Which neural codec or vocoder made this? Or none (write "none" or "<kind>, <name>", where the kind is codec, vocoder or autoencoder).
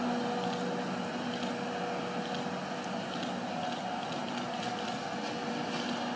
none